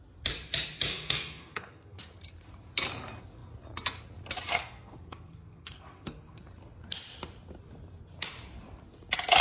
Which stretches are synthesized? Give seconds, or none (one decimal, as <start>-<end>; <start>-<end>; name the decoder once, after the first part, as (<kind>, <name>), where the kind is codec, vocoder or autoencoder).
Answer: 0.9-2.0 (codec, SNAC); 4.5-6.4